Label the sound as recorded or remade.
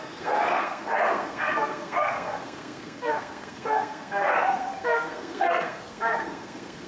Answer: remade